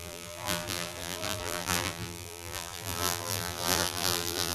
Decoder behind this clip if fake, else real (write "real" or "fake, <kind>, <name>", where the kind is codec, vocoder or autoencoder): fake, vocoder, BigVGAN v2